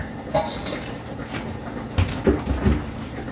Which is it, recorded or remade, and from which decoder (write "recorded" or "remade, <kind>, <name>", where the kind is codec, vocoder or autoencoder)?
recorded